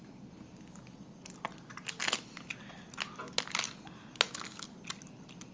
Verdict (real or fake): real